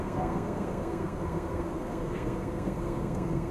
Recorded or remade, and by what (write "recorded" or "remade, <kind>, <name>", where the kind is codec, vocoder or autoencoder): remade, codec, SNAC